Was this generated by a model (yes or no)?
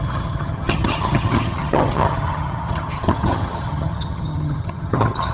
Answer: yes